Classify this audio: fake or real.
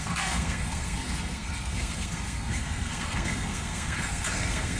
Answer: fake